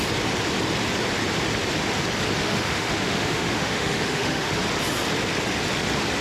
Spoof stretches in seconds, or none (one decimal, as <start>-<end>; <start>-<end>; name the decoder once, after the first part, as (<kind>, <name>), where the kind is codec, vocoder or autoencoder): 2.4-4.5 (autoencoder, DAC-VAE)